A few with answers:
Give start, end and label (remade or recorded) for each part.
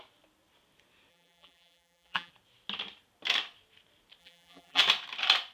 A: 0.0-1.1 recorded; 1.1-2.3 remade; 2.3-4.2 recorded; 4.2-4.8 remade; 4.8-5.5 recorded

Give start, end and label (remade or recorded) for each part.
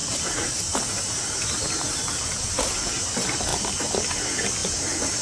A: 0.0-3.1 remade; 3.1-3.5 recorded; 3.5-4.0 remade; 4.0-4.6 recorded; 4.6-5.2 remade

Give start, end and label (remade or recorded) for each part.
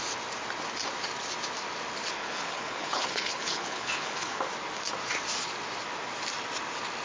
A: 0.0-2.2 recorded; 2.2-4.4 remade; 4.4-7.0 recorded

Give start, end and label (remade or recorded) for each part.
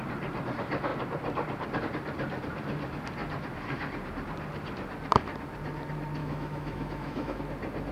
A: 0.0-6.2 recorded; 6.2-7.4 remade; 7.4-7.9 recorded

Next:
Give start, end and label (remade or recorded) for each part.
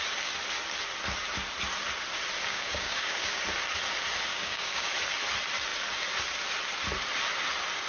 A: 0.0-2.5 recorded; 2.5-3.4 remade; 3.4-4.3 recorded; 4.3-4.9 remade; 4.9-7.9 recorded